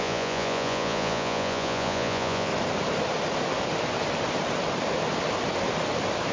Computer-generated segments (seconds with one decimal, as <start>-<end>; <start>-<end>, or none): 0.0-2.5